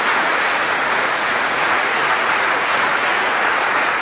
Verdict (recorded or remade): remade